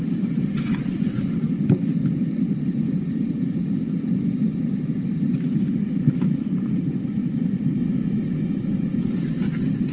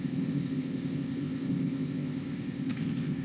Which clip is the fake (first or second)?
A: second